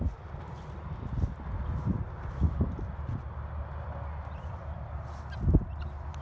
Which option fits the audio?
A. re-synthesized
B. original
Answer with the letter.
B